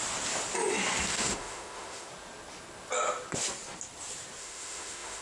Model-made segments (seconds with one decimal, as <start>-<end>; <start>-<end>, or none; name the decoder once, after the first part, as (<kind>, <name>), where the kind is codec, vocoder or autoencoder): 1.1-2.1 (autoencoder, DAC-VAE); 4.4-5.2